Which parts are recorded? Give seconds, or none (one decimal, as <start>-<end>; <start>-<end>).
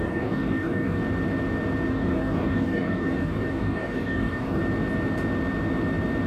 1.0-1.9; 4.6-6.3